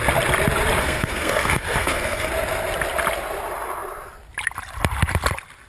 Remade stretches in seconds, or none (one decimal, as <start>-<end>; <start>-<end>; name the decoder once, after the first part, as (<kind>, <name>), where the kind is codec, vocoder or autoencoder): 0.8-2.3 (codec, SNAC)